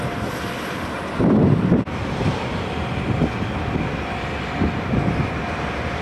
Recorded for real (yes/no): yes